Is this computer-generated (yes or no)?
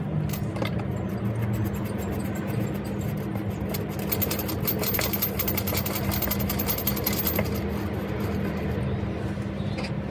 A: no